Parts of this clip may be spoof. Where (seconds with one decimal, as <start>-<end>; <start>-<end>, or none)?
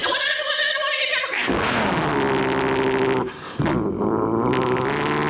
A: 0.0-0.7